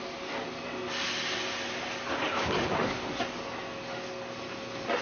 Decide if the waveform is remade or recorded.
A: recorded